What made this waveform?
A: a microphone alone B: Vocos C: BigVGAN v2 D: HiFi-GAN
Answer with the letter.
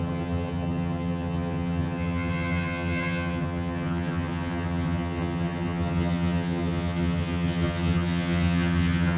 D